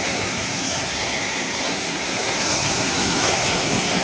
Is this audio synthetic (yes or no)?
yes